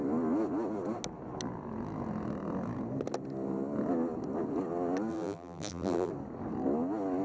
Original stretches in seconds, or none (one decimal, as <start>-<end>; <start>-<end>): 0.0-5.1; 6.1-7.2